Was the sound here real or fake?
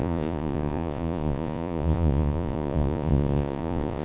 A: fake